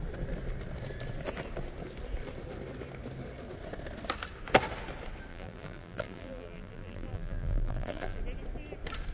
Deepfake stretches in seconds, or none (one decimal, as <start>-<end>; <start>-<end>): 5.3-8.2